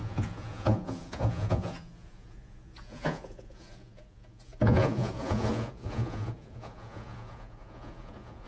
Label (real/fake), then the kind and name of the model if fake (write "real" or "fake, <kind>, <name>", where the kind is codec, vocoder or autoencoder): fake, vocoder, Vocos